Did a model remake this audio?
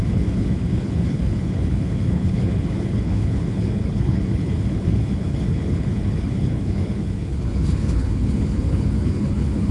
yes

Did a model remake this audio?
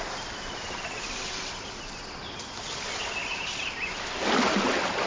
no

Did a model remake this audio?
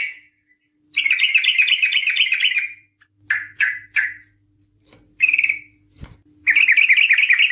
no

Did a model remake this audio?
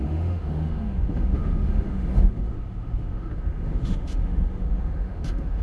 yes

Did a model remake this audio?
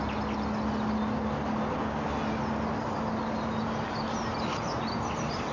no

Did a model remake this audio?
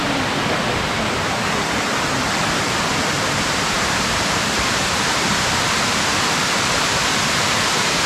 yes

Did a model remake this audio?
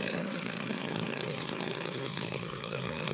yes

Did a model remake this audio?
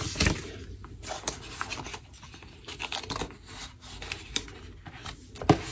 no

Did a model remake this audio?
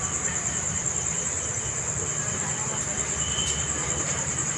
no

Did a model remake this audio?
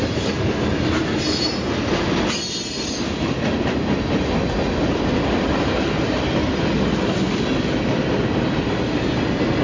no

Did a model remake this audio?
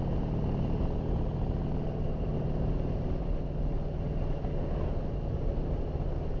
no